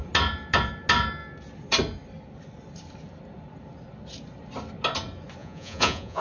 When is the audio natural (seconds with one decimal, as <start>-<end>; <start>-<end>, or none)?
0.0-5.4